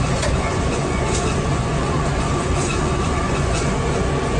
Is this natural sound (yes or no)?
no